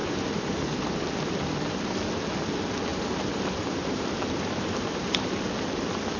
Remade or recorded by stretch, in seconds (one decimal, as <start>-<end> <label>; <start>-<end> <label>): 0.0-1.8 remade; 1.8-2.9 recorded; 2.9-5.4 remade; 5.4-6.2 recorded